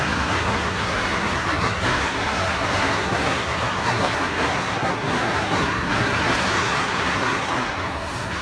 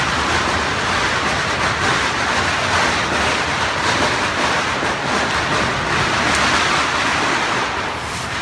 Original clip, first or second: second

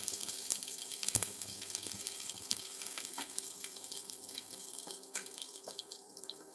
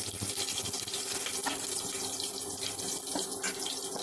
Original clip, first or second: second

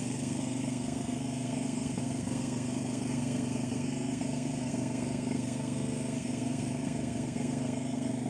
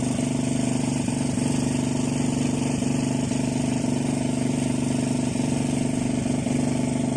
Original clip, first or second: second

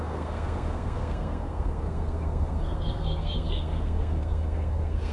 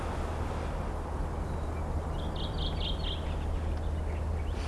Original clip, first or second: second